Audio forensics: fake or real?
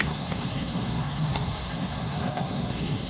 fake